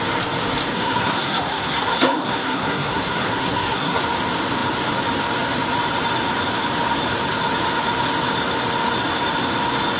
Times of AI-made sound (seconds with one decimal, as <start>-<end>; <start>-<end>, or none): 0.7-4.0